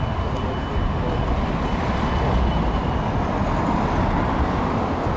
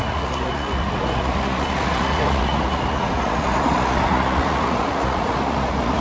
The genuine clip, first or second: first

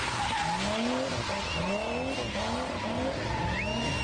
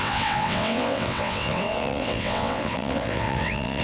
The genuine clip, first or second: first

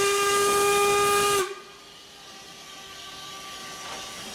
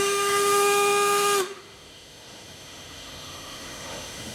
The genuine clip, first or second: first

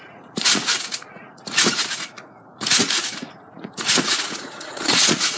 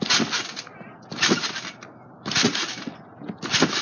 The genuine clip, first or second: second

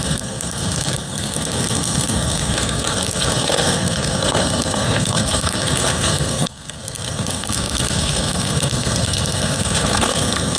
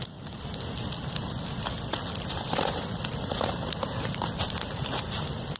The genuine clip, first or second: second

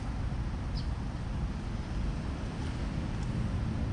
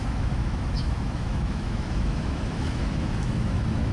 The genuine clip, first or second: first